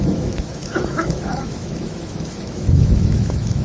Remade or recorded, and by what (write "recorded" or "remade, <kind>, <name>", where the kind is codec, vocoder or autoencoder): remade, autoencoder, DAC-VAE